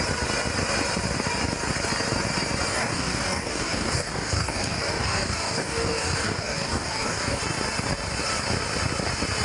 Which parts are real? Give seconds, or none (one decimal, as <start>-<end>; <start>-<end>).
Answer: 0.0-2.7; 7.4-9.4